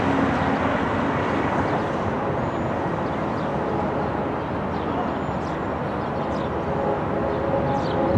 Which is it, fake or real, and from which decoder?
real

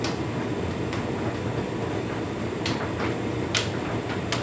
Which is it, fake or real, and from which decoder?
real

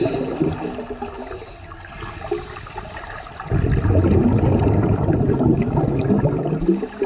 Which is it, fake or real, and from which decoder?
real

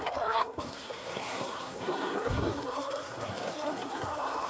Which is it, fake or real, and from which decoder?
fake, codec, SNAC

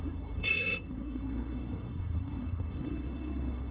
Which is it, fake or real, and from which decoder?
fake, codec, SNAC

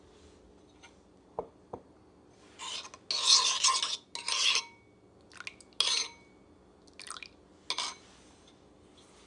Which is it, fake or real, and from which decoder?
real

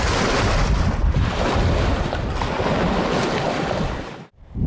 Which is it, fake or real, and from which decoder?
real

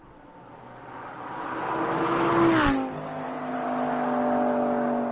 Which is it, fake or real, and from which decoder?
real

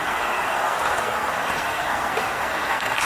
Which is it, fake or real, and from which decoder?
fake, codec, SNAC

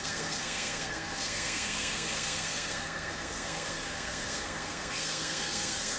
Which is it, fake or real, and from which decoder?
fake, codec, SNAC